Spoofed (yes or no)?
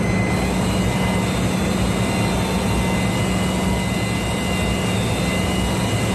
no